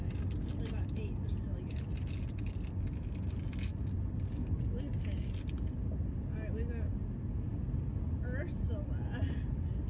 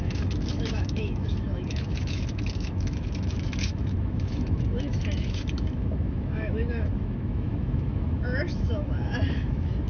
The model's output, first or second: second